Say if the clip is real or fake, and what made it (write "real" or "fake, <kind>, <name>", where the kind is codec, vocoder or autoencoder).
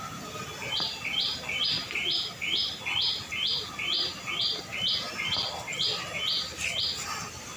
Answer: real